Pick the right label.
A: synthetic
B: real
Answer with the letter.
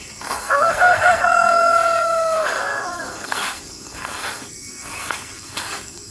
A